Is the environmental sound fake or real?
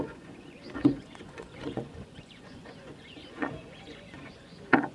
fake